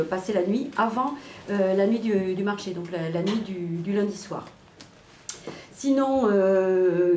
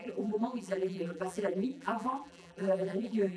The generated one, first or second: second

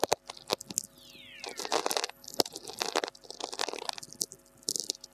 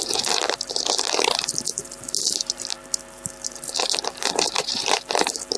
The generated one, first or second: second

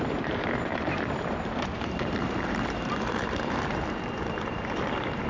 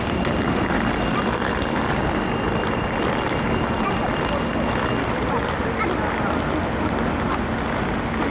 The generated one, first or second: first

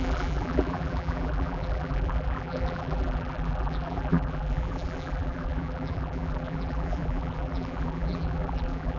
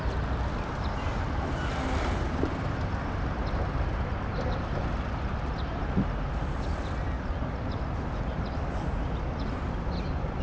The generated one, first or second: first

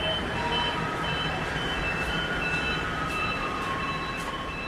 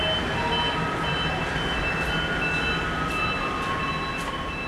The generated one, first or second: first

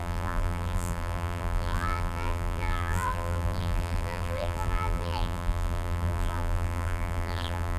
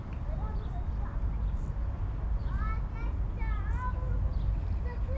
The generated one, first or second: first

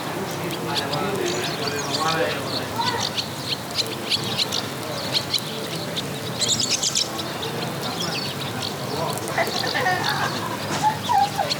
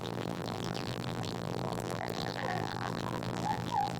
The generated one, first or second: second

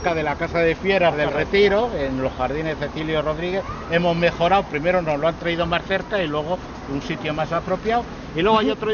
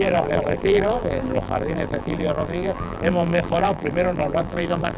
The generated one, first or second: second